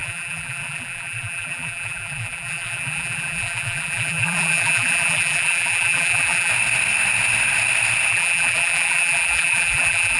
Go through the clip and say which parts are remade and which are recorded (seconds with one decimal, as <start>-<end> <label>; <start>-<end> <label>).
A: 0.0-6.5 remade; 6.5-8.1 recorded; 8.1-10.2 remade